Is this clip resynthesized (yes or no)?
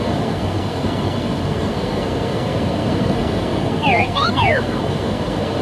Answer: yes